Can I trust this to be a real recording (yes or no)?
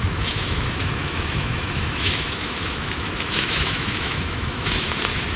no